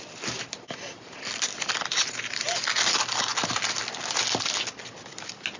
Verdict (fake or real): real